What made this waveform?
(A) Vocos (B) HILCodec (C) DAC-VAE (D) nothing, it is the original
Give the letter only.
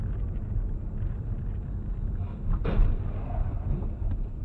D